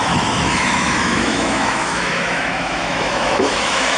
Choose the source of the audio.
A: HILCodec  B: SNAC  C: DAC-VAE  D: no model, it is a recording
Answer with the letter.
C